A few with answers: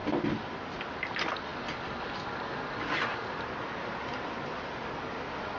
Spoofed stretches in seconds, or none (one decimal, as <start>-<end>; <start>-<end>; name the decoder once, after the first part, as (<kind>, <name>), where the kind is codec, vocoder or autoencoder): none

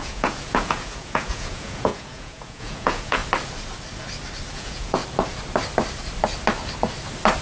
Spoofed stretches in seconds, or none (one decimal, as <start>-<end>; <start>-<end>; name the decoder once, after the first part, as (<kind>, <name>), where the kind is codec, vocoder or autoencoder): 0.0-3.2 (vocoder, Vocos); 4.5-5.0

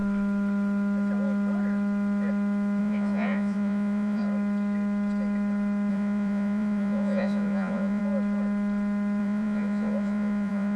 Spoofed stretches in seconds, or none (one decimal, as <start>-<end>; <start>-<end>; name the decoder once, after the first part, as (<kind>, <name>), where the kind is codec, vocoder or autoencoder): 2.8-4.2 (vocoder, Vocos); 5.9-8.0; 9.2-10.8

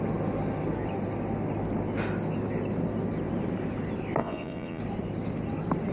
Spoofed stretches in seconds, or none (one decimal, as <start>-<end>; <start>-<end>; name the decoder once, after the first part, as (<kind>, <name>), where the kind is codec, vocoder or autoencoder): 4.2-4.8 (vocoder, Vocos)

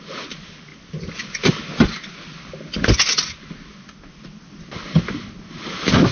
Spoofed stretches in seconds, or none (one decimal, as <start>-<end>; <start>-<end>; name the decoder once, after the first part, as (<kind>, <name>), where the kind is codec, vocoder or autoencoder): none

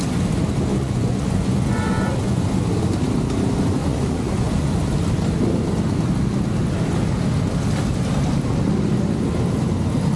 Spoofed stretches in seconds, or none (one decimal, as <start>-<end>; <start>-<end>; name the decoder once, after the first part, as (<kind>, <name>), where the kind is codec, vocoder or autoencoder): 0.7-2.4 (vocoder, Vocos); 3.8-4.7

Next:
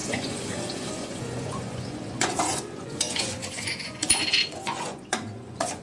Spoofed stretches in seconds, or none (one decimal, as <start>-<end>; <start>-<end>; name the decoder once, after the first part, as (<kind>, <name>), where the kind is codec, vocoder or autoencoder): 0.0-5.8 (vocoder, Vocos)

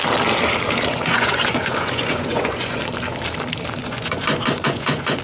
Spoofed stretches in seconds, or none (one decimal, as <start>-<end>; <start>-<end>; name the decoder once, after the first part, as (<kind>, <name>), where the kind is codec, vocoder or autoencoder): 0.9-2.8 (vocoder, Vocos); 3.8-5.2